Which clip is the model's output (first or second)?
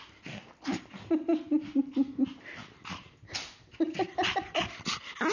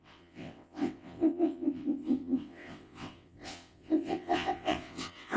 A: second